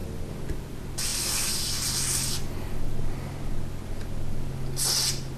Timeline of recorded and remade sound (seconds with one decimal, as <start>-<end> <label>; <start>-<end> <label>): 0.0-5.4 recorded

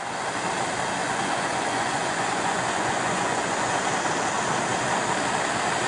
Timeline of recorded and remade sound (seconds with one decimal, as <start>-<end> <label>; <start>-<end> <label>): 0.0-1.0 recorded; 1.0-3.9 remade; 3.9-5.9 recorded

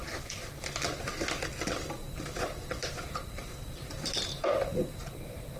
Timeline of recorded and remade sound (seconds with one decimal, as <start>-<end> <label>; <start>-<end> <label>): 0.0-0.8 remade; 0.8-2.0 recorded; 2.0-5.6 remade

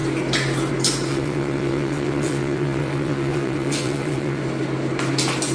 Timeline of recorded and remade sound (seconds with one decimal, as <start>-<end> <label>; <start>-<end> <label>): 0.0-1.1 recorded; 1.1-4.4 remade; 4.4-5.5 recorded

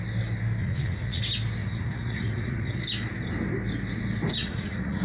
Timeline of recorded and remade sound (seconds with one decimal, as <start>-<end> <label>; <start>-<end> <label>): 0.0-0.6 recorded; 0.6-1.2 remade; 1.2-1.6 recorded; 1.6-2.8 remade; 2.8-4.4 recorded; 4.4-5.0 remade

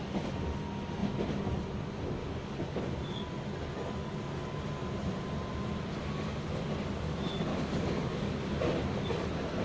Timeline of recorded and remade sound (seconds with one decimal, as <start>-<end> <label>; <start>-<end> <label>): 0.0-2.2 recorded; 2.2-2.8 remade; 2.8-4.0 recorded; 4.0-4.6 remade; 4.6-7.5 recorded; 7.5-8.4 remade; 8.4-9.6 recorded

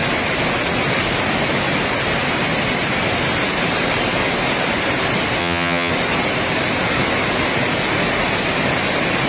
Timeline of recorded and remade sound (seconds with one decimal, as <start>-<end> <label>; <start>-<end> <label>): 0.0-5.4 recorded; 5.4-5.9 remade; 5.9-9.3 recorded